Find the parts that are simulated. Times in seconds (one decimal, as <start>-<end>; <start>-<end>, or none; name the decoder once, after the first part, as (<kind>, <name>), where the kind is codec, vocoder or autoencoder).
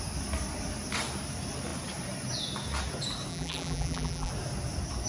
3.3-4.3 (vocoder, BigVGAN v2)